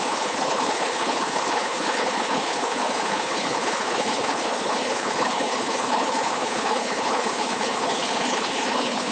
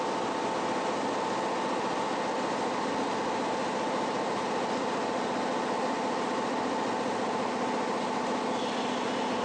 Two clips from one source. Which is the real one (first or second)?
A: second